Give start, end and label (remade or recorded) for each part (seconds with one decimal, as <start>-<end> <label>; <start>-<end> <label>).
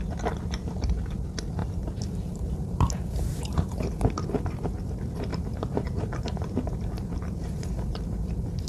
0.0-1.6 recorded; 1.6-3.9 remade; 3.9-5.3 recorded; 5.3-8.7 remade